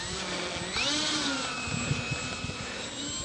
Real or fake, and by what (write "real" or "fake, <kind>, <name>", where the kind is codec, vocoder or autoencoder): real